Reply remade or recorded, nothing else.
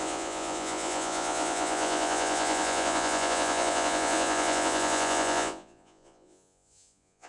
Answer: remade